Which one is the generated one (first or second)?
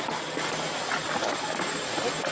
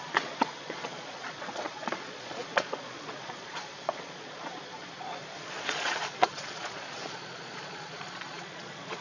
second